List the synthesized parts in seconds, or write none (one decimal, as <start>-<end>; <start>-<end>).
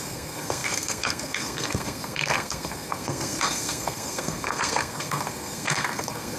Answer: 0.0-6.4